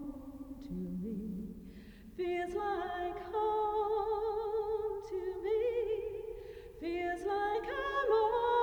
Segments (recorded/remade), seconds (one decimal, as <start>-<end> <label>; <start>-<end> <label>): 0.0-8.6 recorded